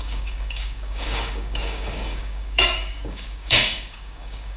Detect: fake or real fake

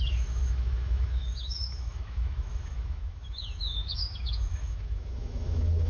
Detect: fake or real fake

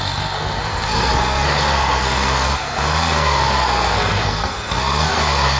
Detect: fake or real fake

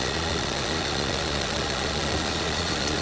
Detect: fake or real fake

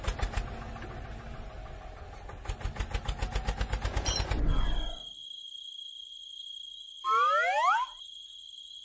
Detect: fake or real real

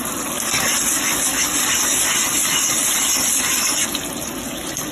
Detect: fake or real real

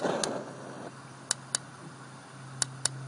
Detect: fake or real real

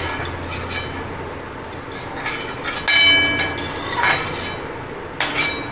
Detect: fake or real real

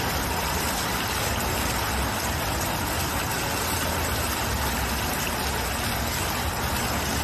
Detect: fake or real real